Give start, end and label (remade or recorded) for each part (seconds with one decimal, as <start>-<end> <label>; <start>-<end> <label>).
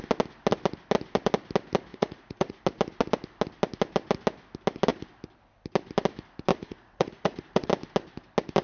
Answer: 0.0-1.9 recorded; 1.9-2.6 remade; 2.6-6.5 recorded; 6.5-7.7 remade; 7.7-8.6 recorded